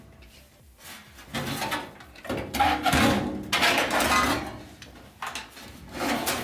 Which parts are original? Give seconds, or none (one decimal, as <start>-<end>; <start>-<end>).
0.0-6.4